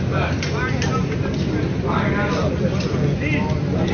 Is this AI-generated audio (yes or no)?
no